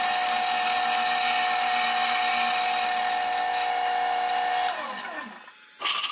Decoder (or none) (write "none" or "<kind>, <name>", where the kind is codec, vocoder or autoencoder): none